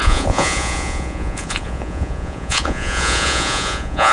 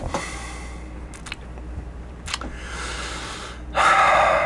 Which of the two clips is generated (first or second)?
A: first